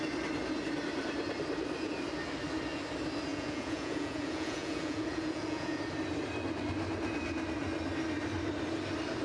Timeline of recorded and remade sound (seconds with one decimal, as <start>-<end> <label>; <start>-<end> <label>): 0.0-3.3 recorded; 3.3-5.8 remade; 5.8-9.2 recorded